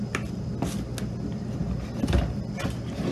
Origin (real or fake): real